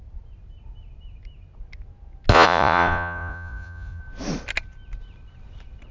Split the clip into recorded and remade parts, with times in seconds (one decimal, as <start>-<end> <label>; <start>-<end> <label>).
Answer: 0.0-2.3 recorded; 2.3-4.0 remade; 4.0-5.9 recorded